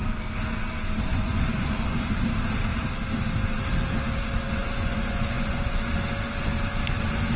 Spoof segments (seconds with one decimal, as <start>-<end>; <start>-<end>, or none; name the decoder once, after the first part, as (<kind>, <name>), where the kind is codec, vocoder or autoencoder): 1.1-2.1 (vocoder, Vocos); 4.6-5.9